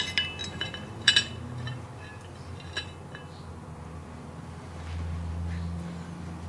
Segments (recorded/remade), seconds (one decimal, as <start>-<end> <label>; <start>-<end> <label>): 0.0-0.4 recorded; 0.4-1.1 remade; 1.1-6.5 recorded